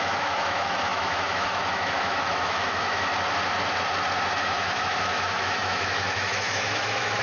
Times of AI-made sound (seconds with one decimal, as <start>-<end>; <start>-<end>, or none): 0.0-3.1; 4.4-7.2